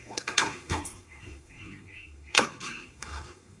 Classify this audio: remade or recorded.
remade